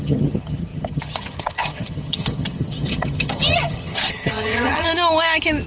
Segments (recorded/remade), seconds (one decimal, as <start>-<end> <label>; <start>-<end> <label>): 0.0-4.9 remade; 4.9-5.7 recorded